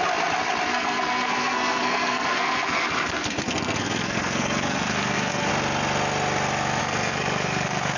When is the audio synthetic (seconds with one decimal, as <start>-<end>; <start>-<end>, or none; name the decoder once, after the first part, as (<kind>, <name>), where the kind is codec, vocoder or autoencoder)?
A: 0.7-5.5 (codec, SNAC); 6.8-8.0